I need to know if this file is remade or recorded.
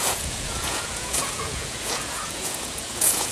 remade